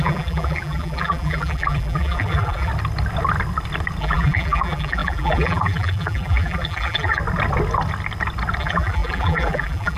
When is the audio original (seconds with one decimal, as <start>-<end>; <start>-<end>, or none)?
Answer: 2.7-4.0; 7.2-8.6